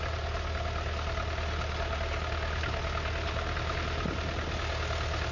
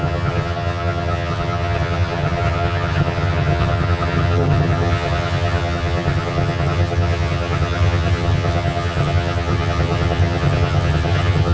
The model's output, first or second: second